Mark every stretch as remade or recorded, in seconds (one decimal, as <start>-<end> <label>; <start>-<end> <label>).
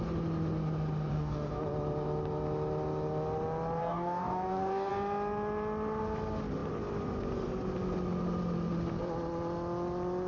0.0-1.1 recorded; 1.1-1.6 remade; 1.6-3.8 recorded; 3.8-4.9 remade; 4.9-10.3 recorded